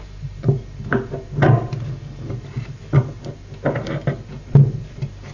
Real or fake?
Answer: real